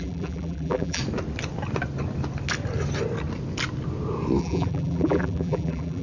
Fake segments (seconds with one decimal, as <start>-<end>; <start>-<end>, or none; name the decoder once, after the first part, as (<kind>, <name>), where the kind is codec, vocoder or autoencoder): 0.0-1.0 (vocoder, BigVGAN v2); 4.4-6.0